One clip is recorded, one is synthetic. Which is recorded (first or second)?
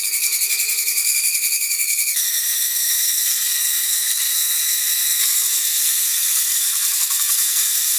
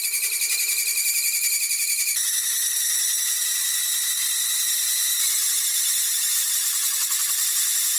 second